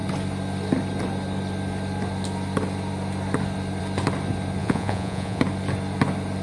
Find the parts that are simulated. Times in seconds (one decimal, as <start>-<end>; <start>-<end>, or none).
4.6-5.4